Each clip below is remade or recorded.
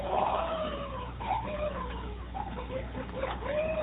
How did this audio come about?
remade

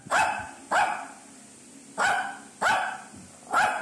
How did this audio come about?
recorded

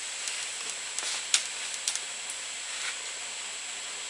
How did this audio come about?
recorded